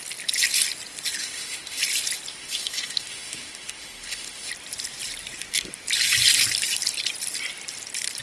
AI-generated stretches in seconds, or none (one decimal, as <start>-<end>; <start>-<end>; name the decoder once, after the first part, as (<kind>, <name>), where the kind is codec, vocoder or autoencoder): 1.2-1.8 (autoencoder, DAC-VAE); 2.3-4.5